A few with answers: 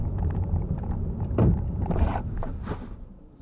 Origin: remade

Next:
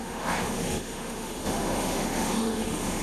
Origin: remade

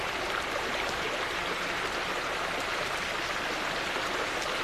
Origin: recorded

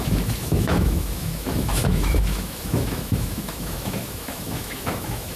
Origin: remade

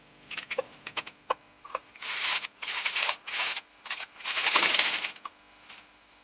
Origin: recorded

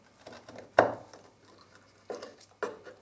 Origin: recorded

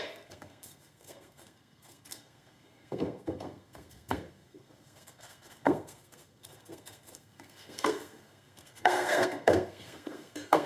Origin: remade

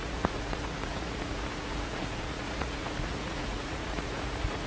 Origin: remade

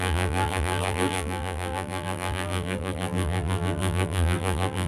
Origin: remade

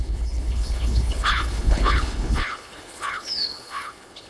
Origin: remade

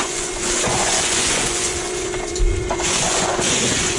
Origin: remade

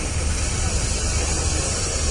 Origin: recorded